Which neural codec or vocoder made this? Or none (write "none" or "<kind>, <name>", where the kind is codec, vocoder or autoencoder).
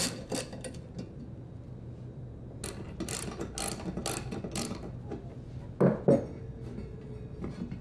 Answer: none